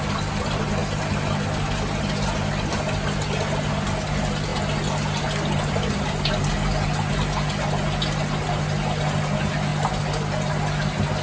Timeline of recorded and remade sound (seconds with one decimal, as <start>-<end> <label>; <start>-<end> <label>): 0.0-11.2 recorded